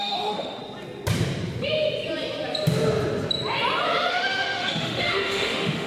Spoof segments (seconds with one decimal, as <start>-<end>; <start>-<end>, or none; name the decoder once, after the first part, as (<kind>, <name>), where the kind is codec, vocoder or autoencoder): 0.0-0.6 (autoencoder, DAC-VAE); 4.1-5.9